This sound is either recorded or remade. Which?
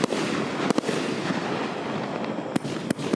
recorded